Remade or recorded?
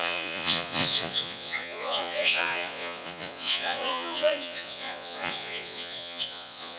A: remade